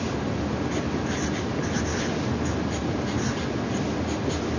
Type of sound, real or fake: real